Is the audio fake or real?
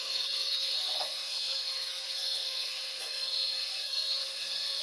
fake